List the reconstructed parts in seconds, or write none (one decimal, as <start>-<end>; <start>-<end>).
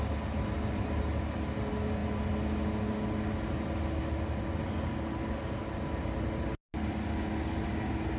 none